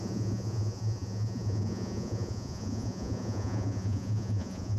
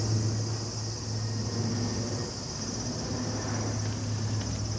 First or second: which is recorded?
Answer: second